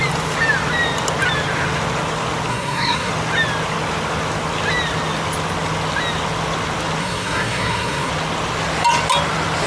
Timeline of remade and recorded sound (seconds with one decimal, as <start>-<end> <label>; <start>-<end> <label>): 0.0-2.5 recorded; 2.5-3.1 remade; 3.1-7.0 recorded; 7.0-8.1 remade; 8.1-9.7 recorded